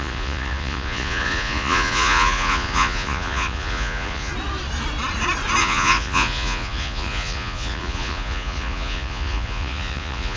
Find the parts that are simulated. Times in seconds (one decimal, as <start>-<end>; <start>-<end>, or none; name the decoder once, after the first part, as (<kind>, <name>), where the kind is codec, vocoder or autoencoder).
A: 0.0-4.3 (vocoder, Vocos); 5.6-10.4